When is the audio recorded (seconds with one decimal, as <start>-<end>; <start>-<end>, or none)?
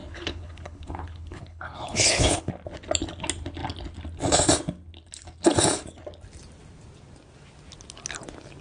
2.5-8.6